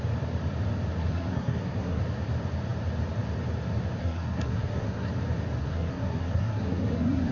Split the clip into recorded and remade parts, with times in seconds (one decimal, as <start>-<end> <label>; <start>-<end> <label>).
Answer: 0.0-1.0 recorded; 1.0-2.0 remade; 2.0-4.0 recorded; 4.0-5.1 remade; 5.1-5.6 recorded; 5.6-7.3 remade